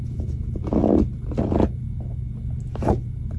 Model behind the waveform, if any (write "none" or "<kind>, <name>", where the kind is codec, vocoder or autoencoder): none